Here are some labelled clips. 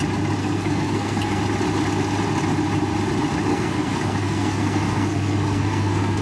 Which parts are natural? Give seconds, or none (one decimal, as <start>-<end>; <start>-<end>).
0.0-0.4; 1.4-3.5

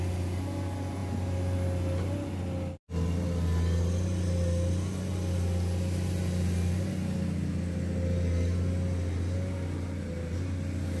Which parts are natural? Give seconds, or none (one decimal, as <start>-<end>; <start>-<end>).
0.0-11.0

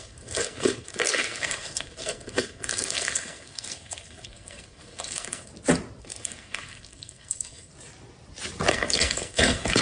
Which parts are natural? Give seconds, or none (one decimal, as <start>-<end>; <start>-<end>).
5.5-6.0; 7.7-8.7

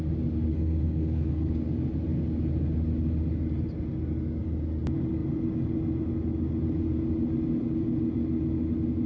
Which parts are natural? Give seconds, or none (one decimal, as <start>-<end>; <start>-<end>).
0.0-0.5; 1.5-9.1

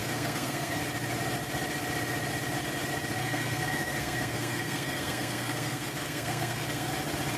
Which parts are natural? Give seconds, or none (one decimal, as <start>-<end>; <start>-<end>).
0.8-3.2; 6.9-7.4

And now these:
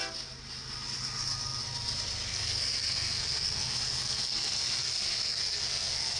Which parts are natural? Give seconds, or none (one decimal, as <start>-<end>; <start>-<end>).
0.0-2.3

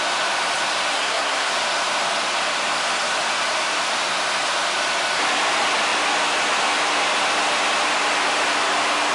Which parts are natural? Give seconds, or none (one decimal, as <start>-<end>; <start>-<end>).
0.0-0.9; 1.5-9.1

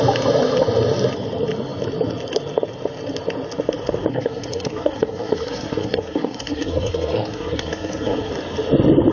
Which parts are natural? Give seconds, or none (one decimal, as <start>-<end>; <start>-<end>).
0.0-4.1; 8.3-9.1